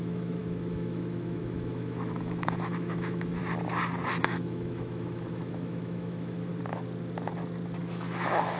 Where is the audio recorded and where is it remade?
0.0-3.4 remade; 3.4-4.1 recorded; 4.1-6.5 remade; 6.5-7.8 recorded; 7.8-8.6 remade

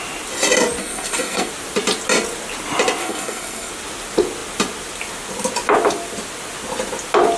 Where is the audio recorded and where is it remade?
0.0-0.8 recorded; 0.8-1.5 remade; 1.5-3.0 recorded; 3.0-3.7 remade; 3.7-7.4 recorded